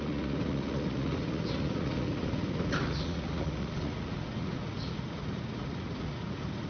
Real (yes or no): no